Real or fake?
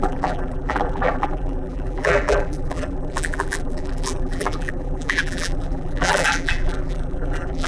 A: fake